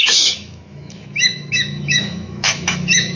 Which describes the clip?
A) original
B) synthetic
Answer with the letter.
B